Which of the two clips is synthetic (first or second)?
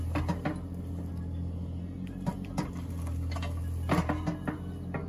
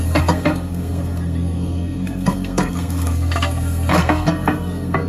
second